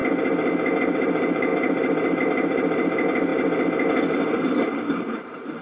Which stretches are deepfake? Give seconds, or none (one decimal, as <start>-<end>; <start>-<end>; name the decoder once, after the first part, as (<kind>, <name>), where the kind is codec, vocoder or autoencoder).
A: 0.8-3.3 (vocoder, BigVGAN v2); 4.1-5.6